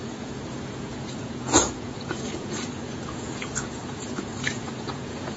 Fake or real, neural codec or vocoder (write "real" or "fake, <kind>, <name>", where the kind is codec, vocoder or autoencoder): fake, vocoder, Vocos